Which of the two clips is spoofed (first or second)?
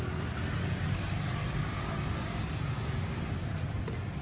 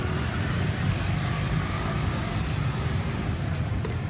second